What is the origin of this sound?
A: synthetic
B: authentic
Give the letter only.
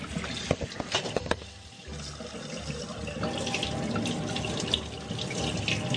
B